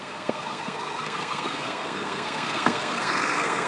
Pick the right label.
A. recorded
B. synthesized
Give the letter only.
B